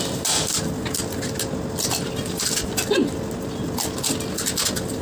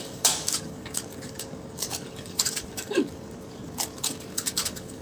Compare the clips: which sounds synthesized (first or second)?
second